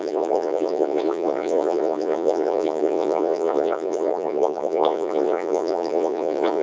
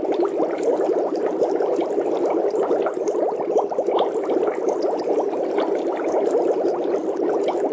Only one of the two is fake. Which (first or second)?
first